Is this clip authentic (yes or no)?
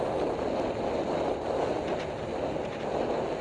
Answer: yes